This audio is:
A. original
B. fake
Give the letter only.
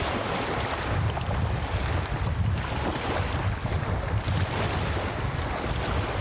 A